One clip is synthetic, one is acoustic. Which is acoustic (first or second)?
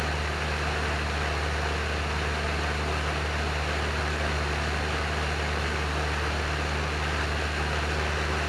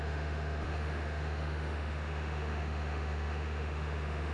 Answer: first